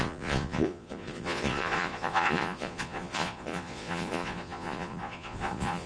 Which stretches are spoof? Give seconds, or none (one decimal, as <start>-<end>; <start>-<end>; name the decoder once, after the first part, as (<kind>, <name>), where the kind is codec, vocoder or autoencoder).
0.0-5.9 (vocoder, Vocos)